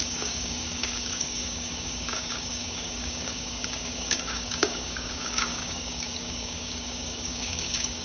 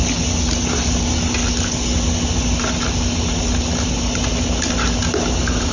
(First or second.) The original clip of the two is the second